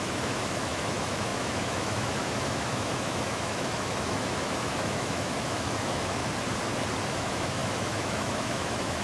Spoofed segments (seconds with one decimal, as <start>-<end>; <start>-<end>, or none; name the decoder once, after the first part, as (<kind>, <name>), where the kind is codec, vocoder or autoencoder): 0.0-6.2 (autoencoder, DAC-VAE); 7.1-9.0